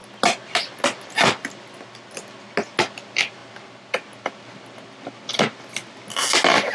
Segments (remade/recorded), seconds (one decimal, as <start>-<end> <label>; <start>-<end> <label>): 0.0-6.7 recorded